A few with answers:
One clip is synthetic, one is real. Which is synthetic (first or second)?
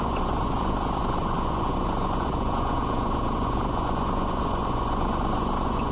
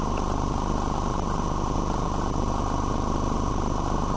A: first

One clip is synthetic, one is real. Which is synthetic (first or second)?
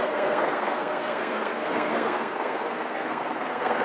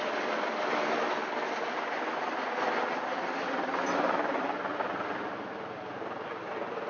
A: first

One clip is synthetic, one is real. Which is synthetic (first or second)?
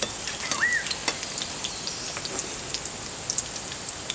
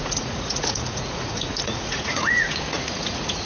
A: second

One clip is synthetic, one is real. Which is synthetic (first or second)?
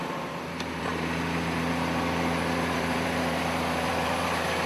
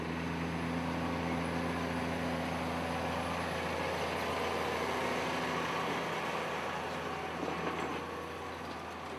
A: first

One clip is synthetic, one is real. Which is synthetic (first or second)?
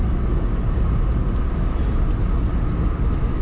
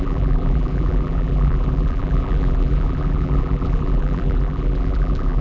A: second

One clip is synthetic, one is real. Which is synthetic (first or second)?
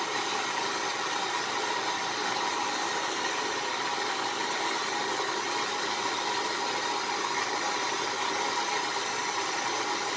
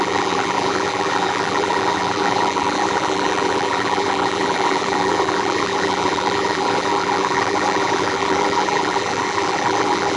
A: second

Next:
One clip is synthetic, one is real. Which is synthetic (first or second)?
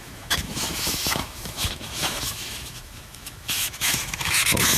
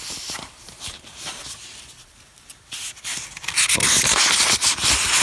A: first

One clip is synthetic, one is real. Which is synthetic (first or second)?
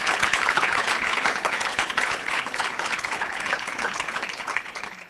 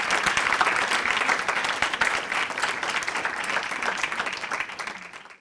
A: first